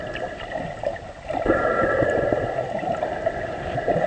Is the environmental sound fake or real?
real